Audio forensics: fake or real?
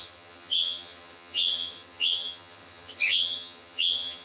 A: fake